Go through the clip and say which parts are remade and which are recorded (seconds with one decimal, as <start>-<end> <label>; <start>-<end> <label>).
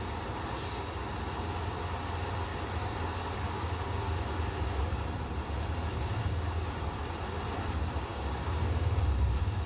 0.0-2.5 recorded; 2.5-5.0 remade; 5.0-5.9 recorded; 5.9-6.7 remade; 6.7-8.1 recorded; 8.1-9.0 remade; 9.0-9.7 recorded